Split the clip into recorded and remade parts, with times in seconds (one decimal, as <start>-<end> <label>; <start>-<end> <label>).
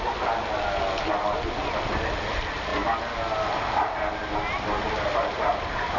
0.0-6.0 recorded